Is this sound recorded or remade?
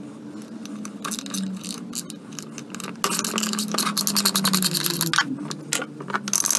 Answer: recorded